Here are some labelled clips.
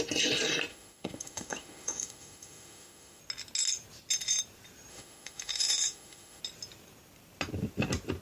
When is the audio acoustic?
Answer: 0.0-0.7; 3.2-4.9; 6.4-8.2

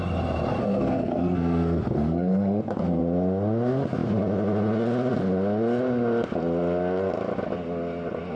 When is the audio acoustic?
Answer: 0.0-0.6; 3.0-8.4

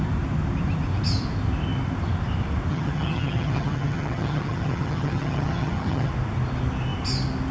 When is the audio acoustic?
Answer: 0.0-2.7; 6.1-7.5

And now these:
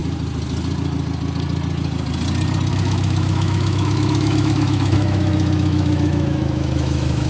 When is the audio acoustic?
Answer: 0.0-2.7

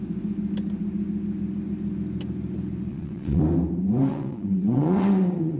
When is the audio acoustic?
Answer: 0.0-2.9; 3.4-4.1

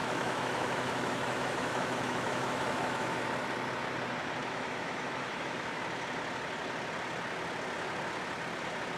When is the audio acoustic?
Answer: 3.2-4.4; 5.8-9.0

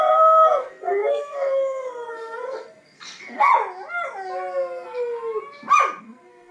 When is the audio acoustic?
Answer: 3.5-6.0

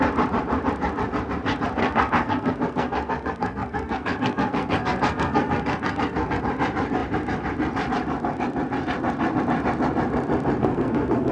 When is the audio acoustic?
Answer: 0.0-1.8; 6.4-10.6